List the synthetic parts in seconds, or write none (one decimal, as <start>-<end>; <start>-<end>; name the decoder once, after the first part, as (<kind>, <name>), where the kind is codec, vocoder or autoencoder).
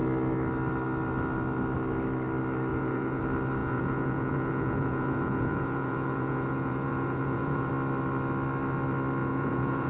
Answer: 2.7-3.2 (vocoder, Vocos); 3.6-7.7; 9.2-9.9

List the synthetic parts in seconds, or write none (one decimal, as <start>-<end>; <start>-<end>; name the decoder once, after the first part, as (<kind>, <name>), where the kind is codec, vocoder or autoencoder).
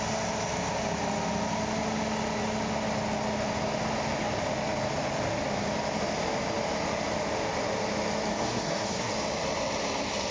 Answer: 8.3-9.1 (codec, SNAC)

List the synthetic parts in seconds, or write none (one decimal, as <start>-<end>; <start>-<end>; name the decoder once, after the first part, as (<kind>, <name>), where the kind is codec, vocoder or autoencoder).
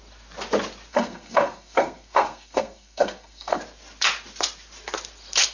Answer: 0.9-3.6 (codec, SNAC)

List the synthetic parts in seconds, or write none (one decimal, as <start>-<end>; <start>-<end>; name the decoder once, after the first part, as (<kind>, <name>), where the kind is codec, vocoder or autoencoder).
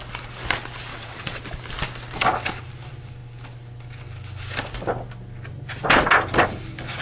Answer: 0.9-1.4 (vocoder, WaveNeXt)